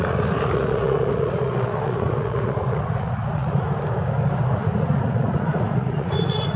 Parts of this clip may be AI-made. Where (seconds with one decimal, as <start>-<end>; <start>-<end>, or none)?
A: 0.0-3.7; 4.5-6.6